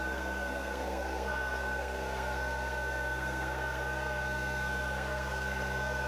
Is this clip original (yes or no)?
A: no